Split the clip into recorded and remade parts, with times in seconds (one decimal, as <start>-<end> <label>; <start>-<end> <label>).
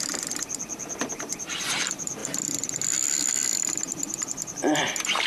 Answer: 0.0-5.3 remade